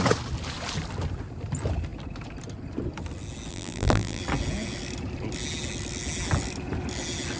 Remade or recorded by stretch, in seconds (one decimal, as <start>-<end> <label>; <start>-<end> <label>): 0.0-3.5 recorded; 3.5-4.2 remade; 4.2-7.4 recorded